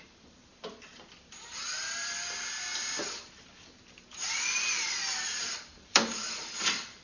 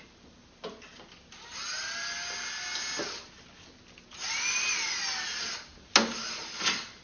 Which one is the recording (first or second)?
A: second